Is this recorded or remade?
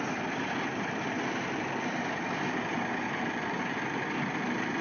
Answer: recorded